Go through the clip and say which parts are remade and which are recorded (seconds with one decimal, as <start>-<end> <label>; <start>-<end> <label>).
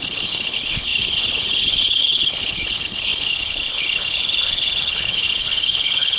0.0-6.2 remade